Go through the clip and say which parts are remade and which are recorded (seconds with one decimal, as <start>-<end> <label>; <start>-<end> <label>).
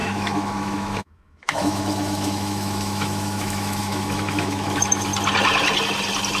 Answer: 0.0-5.1 remade; 5.1-6.4 recorded